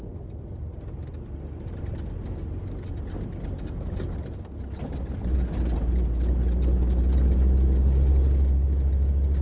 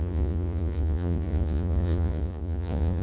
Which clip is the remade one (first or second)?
second